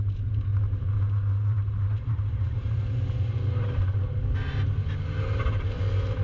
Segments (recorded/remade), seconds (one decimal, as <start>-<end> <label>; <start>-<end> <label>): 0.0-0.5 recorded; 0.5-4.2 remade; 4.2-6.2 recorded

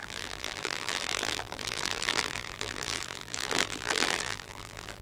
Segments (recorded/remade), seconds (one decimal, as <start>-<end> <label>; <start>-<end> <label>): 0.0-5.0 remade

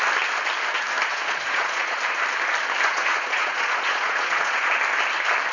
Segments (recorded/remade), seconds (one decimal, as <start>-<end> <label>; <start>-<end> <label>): 0.0-1.1 recorded; 1.1-2.0 remade; 2.0-2.9 recorded; 2.9-4.7 remade; 4.7-5.5 recorded